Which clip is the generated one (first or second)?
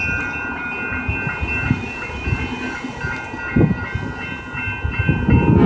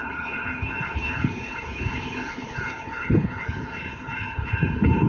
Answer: second